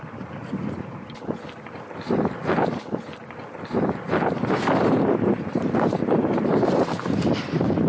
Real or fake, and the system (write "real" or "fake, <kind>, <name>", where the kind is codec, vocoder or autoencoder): fake, vocoder, BigVGAN v2